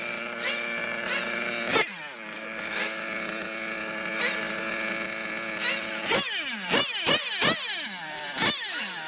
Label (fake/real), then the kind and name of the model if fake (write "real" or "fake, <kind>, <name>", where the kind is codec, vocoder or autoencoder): real